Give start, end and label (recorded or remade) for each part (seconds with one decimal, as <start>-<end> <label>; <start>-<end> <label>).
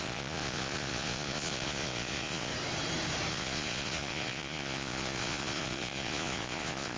0.0-2.5 remade; 2.5-3.3 recorded; 3.3-7.0 remade